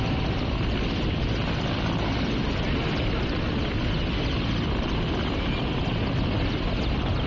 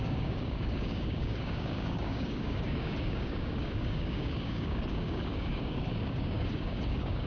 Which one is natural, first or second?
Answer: first